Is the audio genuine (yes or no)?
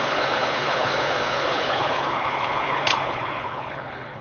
no